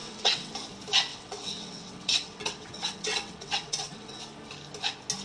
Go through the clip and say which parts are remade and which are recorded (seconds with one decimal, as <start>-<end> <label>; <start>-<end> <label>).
0.0-0.5 remade; 0.5-1.1 recorded; 1.1-4.2 remade; 4.2-5.2 recorded